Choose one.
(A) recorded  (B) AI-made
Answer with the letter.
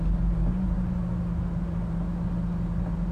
A